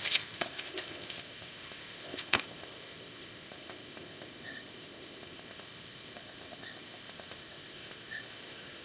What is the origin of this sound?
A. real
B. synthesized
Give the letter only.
B